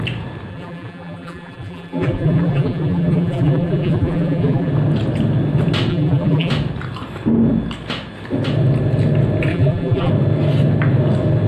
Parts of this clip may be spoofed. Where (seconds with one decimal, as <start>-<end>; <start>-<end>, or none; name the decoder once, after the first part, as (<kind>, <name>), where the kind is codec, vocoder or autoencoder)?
0.5-4.7 (vocoder, BigVGAN v2); 5.9-6.5; 9.5-10.1